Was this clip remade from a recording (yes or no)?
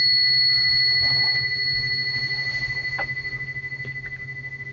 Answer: no